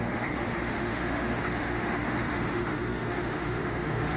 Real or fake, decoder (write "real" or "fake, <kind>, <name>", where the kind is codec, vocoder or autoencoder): fake, autoencoder, DAC-VAE